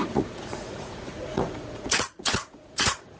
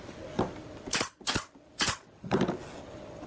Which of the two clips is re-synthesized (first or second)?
first